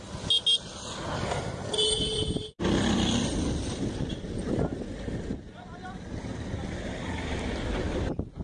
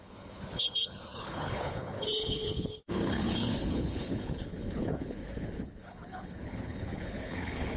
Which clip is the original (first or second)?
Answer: first